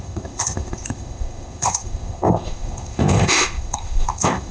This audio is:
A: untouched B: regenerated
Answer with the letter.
B